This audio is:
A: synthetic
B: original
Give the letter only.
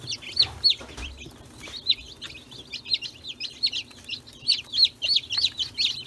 B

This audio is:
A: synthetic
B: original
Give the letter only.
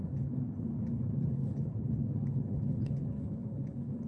A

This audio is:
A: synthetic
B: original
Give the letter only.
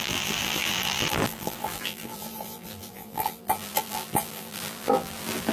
A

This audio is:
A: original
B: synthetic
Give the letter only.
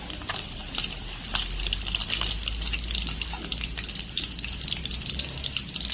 A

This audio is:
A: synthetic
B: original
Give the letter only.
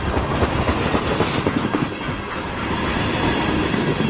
B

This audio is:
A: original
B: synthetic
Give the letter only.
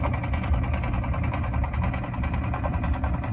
A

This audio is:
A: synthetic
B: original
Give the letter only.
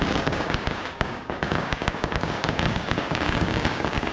A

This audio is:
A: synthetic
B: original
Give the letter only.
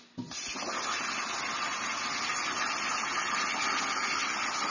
B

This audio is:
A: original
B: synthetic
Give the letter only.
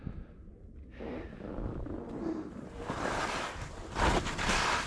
A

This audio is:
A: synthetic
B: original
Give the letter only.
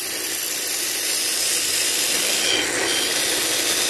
B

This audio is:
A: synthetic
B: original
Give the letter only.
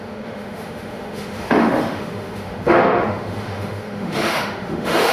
A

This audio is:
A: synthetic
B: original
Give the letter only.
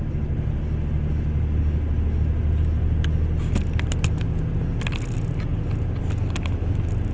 B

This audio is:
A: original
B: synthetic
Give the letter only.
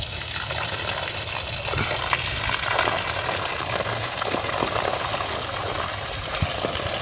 A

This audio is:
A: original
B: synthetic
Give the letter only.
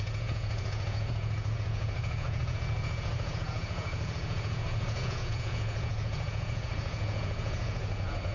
B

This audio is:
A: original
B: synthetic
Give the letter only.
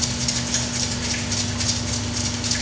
A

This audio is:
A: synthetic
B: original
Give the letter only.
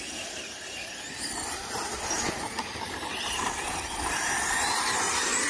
B